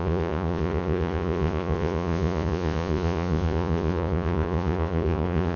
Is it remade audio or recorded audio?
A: remade